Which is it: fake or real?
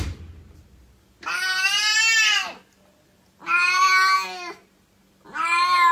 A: real